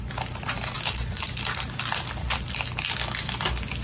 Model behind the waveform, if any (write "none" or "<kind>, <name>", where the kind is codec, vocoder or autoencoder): none